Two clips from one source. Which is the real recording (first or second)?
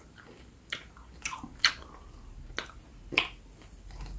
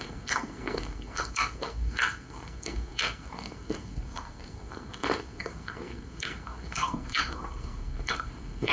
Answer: first